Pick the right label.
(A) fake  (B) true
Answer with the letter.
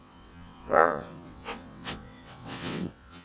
A